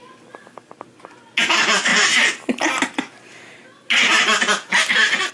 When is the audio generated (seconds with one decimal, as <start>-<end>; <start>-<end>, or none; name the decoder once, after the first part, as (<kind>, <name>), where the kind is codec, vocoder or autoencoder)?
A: none